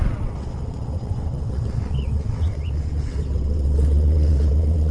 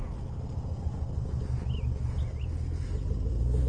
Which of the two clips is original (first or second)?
second